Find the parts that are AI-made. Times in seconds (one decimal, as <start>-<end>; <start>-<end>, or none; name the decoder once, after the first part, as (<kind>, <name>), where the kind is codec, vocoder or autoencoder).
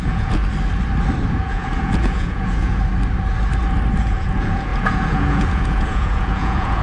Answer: 0.0-0.4 (vocoder, Vocos); 1.3-2.8; 4.0-6.8